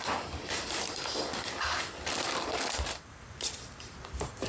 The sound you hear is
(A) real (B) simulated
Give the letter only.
B